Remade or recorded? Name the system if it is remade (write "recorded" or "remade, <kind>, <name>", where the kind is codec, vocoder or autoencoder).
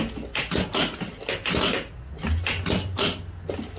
recorded